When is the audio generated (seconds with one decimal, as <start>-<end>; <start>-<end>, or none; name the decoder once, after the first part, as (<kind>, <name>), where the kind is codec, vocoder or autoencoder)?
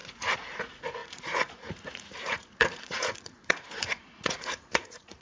0.0-5.2 (vocoder, Vocos)